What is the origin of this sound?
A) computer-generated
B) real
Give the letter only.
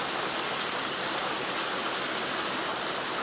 B